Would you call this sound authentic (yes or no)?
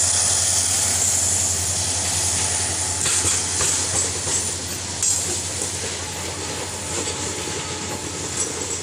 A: yes